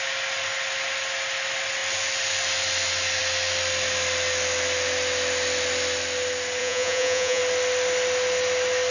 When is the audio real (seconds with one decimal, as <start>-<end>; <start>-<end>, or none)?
0.0-6.6; 7.4-8.9